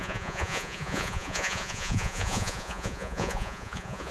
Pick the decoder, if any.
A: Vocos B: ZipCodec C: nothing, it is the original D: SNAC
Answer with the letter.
A